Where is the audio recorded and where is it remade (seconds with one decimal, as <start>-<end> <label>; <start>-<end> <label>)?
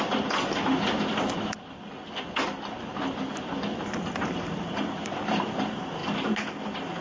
0.0-6.0 remade; 6.0-6.6 recorded; 6.6-7.0 remade